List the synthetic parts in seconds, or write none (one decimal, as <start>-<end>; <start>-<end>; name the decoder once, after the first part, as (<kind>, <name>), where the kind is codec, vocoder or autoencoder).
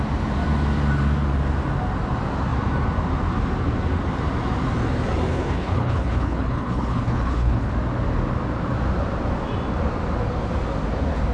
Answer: 5.3-7.7 (codec, HILCodec)